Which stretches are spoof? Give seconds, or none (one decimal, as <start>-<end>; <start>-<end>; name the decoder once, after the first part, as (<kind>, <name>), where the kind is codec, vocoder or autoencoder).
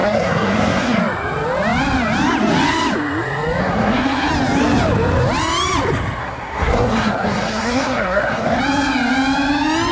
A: 0.0-1.0 (codec, SNAC); 3.6-4.3; 6.2-8.6